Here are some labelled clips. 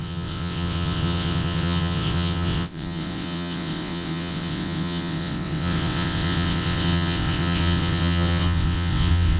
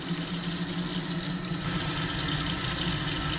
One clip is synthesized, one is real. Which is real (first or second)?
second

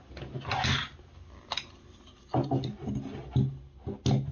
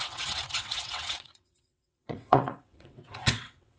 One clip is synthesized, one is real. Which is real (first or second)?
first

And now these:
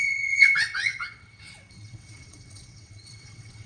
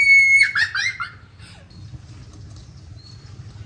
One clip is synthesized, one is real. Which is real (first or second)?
second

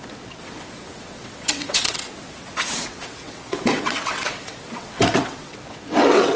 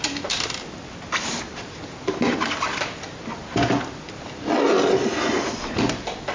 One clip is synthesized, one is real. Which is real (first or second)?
second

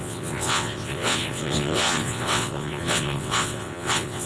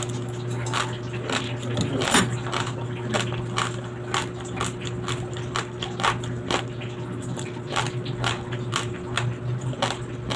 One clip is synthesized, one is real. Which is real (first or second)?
second